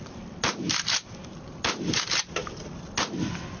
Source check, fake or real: real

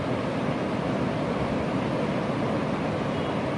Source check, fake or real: real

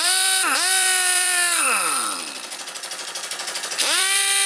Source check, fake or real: fake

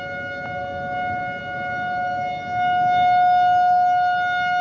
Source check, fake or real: real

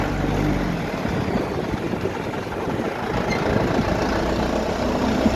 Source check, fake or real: real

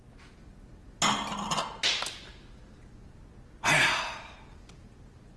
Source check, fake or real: real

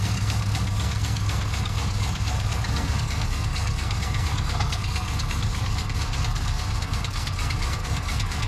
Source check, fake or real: fake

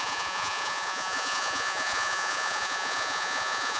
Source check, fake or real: fake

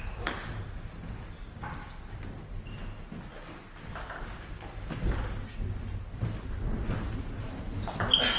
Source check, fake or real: real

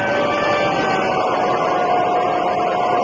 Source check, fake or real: real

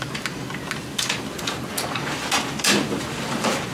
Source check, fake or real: real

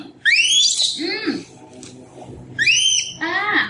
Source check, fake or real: real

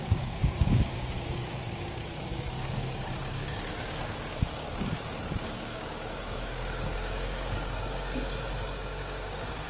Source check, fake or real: fake